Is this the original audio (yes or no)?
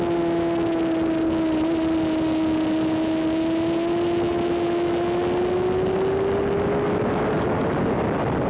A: yes